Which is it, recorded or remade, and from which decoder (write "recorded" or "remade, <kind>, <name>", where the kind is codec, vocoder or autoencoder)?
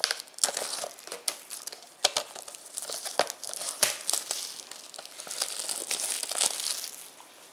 recorded